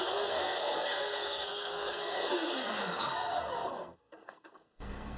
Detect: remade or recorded remade